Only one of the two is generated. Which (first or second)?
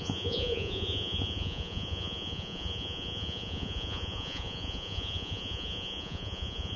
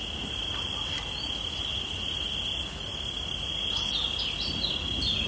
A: first